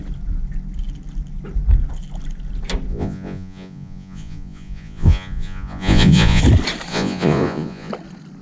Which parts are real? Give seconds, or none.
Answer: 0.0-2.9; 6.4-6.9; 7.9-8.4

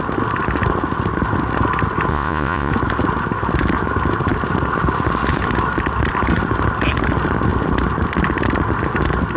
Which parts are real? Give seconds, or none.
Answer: 0.0-2.1; 2.7-9.4

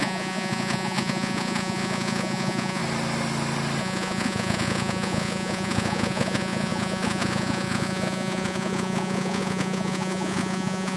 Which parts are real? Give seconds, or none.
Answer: 2.8-3.8

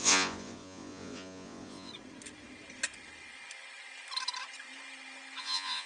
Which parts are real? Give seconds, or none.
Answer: 1.9-5.4

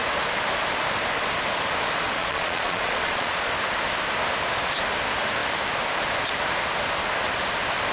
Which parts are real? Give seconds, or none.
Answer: 0.0-2.2; 3.5-7.9